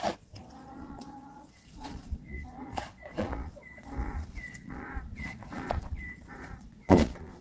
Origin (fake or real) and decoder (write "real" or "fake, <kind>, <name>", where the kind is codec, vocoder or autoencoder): fake, vocoder, Vocos